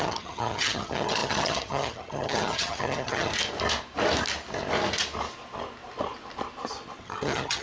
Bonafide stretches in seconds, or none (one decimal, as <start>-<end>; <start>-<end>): 3.3-7.0